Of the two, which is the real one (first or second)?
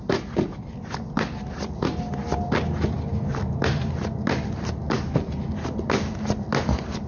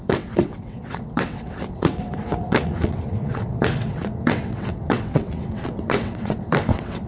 first